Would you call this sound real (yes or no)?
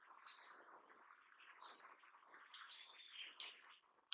no